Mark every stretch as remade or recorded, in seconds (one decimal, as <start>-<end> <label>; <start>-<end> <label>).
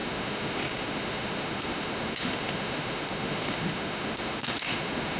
0.0-5.2 remade